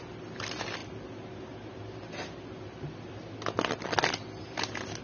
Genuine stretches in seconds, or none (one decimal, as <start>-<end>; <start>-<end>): 0.0-5.0